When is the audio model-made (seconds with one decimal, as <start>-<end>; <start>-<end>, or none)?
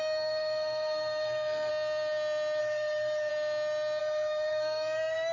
0.0-1.7; 2.6-3.3; 4.0-5.3